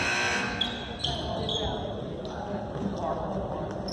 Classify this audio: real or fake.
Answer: real